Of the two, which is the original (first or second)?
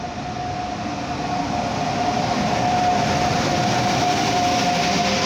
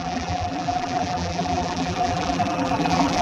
first